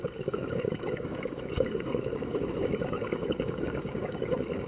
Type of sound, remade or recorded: remade